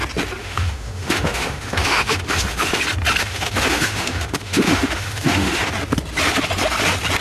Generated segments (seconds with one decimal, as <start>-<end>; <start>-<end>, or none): 0.4-2.8; 3.2-5.7